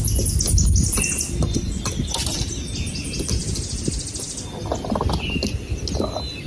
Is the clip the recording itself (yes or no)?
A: yes